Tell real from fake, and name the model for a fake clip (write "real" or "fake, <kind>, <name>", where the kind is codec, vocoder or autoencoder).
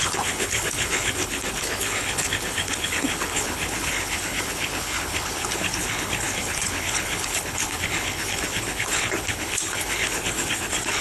fake, codec, HILCodec